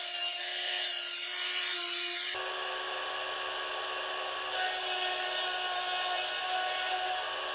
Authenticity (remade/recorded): recorded